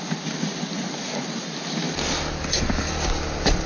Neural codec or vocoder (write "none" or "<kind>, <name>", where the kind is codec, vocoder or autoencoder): none